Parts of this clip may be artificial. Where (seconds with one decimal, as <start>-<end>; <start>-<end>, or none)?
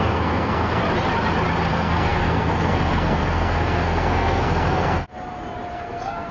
0.0-0.8; 1.7-5.1; 5.7-6.3